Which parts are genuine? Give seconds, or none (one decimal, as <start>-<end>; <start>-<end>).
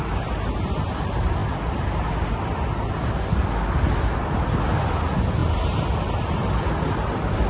0.0-7.5